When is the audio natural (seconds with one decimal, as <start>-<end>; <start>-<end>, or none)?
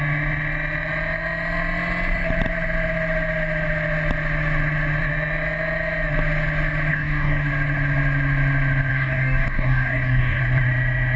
0.0-6.9; 7.5-8.9; 10.4-11.2